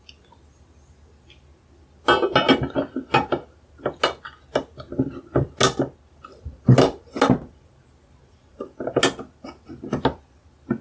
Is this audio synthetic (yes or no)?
no